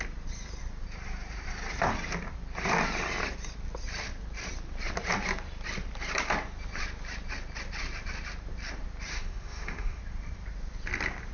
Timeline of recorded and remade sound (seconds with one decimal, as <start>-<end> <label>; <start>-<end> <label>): 0.0-9.1 recorded; 9.1-10.0 remade; 10.0-11.3 recorded